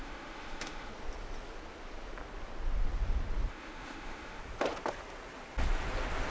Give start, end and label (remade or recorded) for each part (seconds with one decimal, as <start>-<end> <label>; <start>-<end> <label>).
0.0-0.9 remade; 0.9-3.5 recorded; 3.5-4.4 remade; 4.4-6.3 recorded